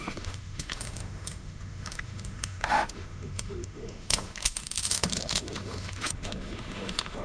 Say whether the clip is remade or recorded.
remade